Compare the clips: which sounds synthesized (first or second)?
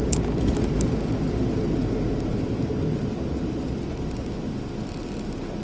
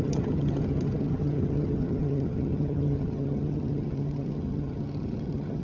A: second